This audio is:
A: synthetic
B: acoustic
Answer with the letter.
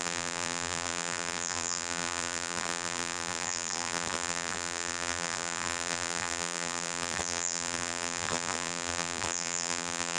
A